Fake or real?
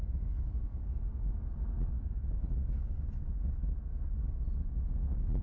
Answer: real